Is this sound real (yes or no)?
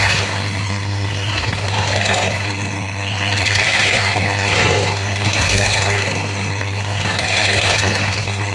no